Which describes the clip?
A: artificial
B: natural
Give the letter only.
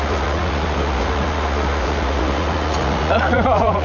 A